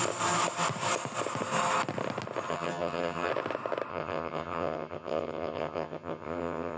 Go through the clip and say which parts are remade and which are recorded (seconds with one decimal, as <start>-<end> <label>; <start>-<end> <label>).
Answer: 0.0-2.5 recorded; 2.5-3.3 remade; 3.3-3.9 recorded; 3.9-6.8 remade